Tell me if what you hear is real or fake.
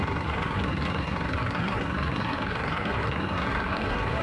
fake